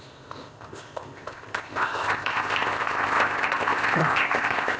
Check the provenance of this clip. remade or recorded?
remade